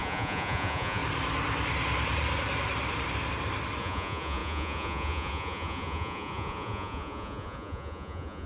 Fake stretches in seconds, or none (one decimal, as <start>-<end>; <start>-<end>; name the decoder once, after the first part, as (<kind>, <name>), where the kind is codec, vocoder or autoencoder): 0.0-1.0 (vocoder, Vocos); 3.8-8.5